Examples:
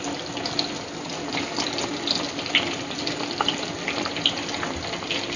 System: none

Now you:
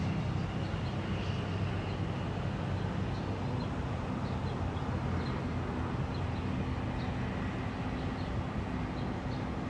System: none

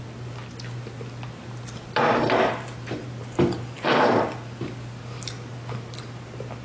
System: none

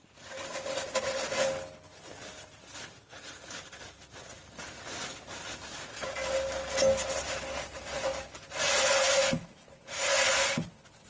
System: none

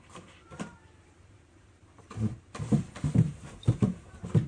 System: vocoder, BigVGAN v2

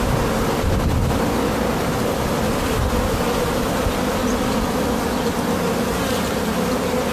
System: none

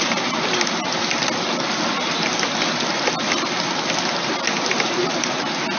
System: none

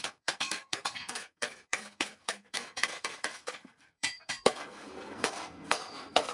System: codec, SNAC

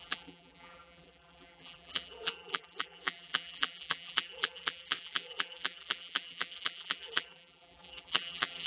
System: vocoder, BigVGAN v2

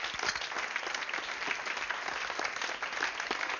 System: none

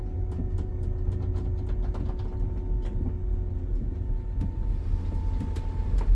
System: none